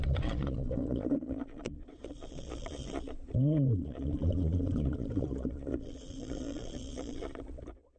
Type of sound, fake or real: fake